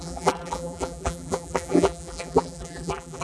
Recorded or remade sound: remade